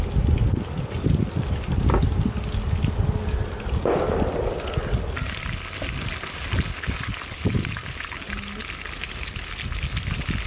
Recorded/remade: recorded